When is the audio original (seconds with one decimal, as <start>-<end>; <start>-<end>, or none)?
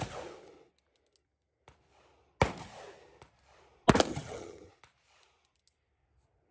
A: 0.0-4.1; 4.7-6.5